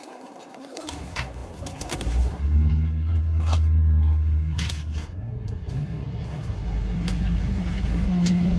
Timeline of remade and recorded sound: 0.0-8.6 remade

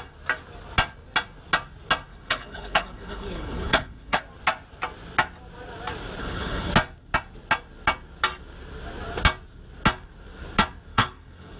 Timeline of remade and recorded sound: 0.0-2.1 recorded; 2.1-4.2 remade; 4.2-6.2 recorded; 6.2-6.7 remade; 6.7-10.9 recorded; 10.9-11.6 remade

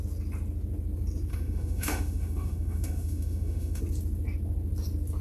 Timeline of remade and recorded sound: 0.0-1.3 recorded; 1.3-3.8 remade; 3.8-5.2 recorded